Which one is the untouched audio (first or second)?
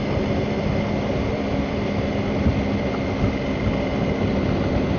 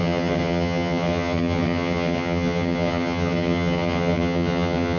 first